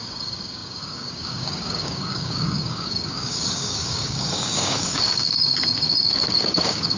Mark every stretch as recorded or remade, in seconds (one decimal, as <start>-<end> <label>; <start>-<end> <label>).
0.0-7.0 remade